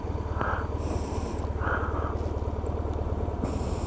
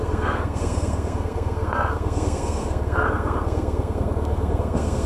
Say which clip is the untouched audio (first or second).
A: first